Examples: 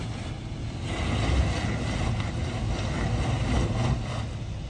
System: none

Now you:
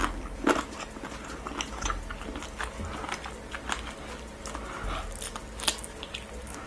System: none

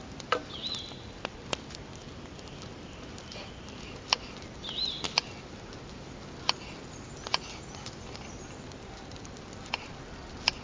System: vocoder, BigVGAN v2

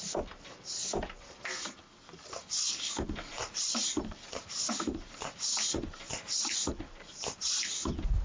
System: none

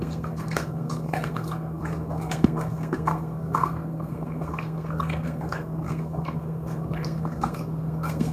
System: codec, SNAC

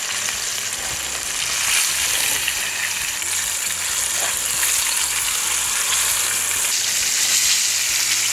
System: none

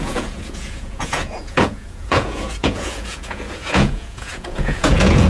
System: vocoder, Vocos